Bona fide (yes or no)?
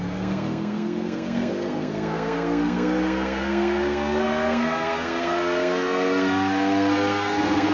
no